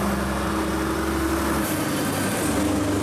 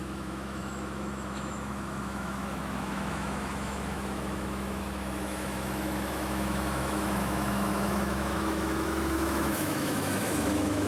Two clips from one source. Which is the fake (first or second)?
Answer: second